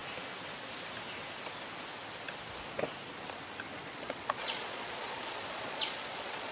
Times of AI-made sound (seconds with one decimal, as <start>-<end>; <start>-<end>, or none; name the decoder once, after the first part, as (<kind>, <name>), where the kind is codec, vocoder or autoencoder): 3.9-6.5 (vocoder, Vocos)